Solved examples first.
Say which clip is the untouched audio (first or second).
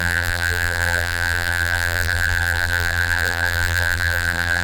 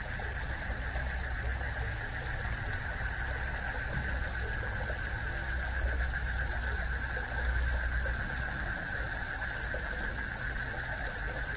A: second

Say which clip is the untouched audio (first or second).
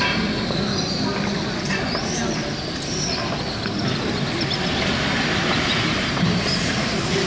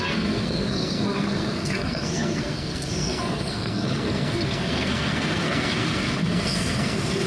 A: first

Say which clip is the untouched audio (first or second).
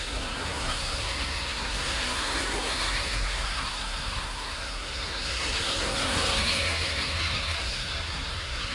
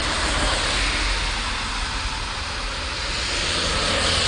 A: second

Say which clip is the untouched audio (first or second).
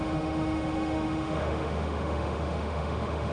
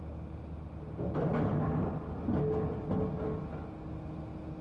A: second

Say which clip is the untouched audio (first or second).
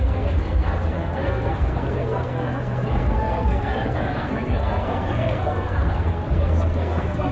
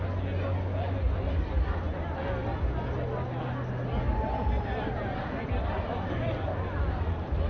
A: second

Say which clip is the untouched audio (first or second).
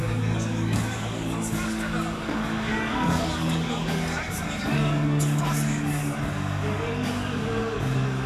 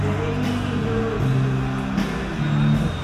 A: second